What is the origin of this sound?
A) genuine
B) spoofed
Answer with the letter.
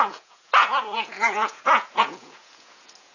B